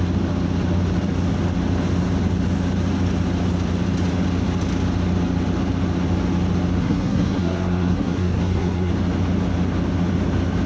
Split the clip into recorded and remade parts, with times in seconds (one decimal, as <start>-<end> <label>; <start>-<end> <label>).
0.0-6.8 recorded; 6.8-8.9 remade; 8.9-10.7 recorded